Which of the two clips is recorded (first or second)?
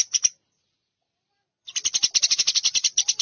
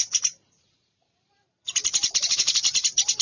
first